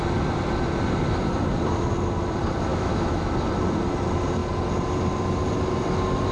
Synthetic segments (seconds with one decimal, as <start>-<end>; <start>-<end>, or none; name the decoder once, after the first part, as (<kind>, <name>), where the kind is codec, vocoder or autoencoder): 2.7-3.3 (autoencoder, DAC-VAE)